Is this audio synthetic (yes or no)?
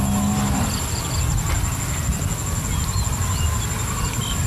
no